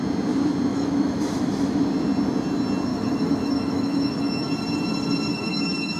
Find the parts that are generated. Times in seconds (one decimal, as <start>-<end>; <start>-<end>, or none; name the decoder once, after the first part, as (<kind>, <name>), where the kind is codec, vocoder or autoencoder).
0.7-1.8 (autoencoder, DAC-VAE); 2.9-4.5; 5.3-6.0

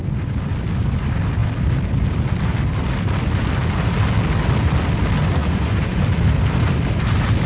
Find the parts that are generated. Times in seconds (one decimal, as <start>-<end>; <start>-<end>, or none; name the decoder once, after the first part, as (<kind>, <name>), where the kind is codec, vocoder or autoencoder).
5.4-6.0 (vocoder, Vocos)

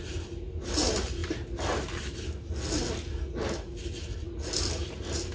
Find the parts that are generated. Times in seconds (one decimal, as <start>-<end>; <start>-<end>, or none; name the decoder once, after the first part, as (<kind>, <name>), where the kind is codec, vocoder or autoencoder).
none

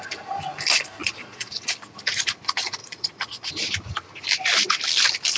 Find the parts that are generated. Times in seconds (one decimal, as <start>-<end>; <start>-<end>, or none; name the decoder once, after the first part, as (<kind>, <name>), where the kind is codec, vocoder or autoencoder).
1.0-1.5 (vocoder, Vocos); 2.8-3.5

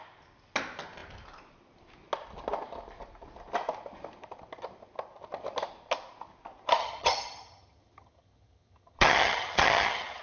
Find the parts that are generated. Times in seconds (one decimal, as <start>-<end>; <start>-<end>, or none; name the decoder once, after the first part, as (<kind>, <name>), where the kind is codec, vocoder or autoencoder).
6.8-10.2 (vocoder, HiFi-GAN)